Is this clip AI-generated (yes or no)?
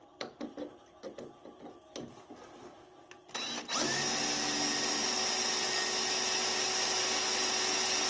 no